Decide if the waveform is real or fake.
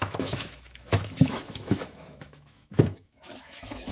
fake